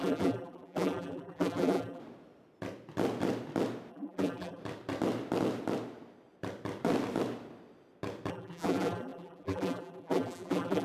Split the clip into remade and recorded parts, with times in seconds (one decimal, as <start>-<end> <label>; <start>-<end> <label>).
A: 0.0-2.0 remade; 2.0-3.9 recorded; 3.9-4.6 remade; 4.6-8.3 recorded; 8.3-10.8 remade